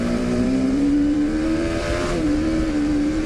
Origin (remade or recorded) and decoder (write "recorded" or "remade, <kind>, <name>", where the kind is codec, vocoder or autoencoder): remade, vocoder, BigVGAN v2